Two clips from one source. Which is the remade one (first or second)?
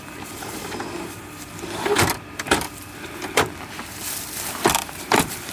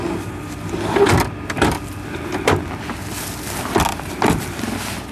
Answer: first